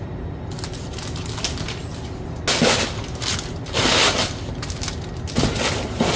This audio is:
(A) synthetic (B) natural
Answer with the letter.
B